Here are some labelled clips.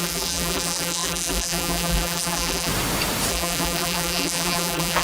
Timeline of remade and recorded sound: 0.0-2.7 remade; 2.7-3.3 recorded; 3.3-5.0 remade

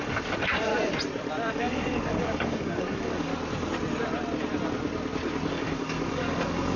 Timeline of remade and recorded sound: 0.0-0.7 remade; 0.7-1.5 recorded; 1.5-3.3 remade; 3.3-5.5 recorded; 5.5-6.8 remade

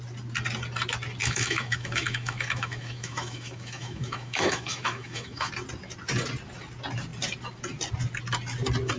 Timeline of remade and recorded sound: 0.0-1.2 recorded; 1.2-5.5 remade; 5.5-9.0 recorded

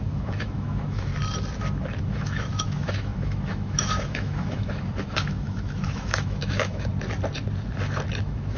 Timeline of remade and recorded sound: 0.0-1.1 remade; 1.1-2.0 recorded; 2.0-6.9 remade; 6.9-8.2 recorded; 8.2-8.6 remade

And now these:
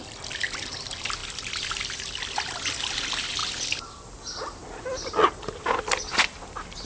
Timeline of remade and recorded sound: 0.0-6.9 recorded

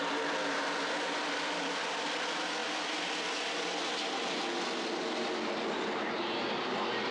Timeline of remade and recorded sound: 0.0-7.1 recorded

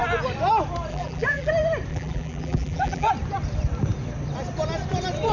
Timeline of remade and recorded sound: 0.0-0.9 recorded; 0.9-1.5 remade; 1.5-1.9 recorded; 1.9-3.1 remade; 3.1-5.3 recorded